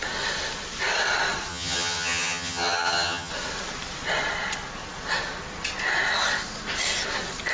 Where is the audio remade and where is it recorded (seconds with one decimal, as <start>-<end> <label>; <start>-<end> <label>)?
0.0-1.5 recorded; 1.5-3.3 remade; 3.3-7.5 recorded